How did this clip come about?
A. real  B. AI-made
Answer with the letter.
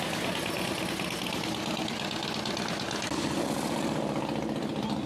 A